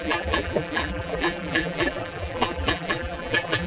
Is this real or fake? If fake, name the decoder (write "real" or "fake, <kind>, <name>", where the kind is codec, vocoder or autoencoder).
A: fake, vocoder, BigVGAN v2